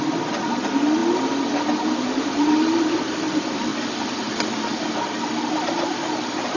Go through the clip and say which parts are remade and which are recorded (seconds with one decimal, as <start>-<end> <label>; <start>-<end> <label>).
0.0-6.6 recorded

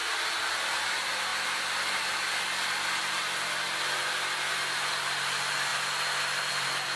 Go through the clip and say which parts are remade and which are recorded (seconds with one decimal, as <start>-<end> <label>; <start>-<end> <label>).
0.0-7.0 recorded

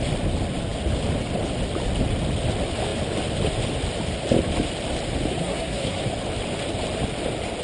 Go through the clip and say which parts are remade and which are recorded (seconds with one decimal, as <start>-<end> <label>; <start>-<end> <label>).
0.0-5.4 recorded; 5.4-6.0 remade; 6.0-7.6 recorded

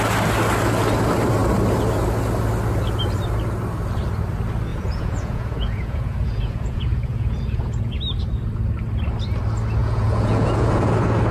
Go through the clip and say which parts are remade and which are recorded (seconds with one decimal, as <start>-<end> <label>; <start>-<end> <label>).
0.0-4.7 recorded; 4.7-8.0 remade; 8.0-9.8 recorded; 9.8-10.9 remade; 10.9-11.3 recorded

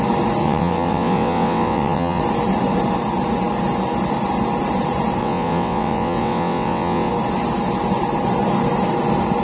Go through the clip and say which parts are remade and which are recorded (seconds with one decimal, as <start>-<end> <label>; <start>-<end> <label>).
0.0-0.4 recorded; 0.4-2.2 remade; 2.2-5.2 recorded; 5.2-7.1 remade; 7.1-9.4 recorded